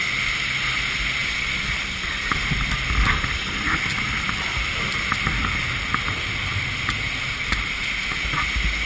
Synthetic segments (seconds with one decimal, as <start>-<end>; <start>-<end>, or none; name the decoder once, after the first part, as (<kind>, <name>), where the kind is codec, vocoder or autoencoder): 1.2-2.7 (vocoder, BigVGAN v2); 3.4-5.6